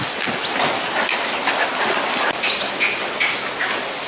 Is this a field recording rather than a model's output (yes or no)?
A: yes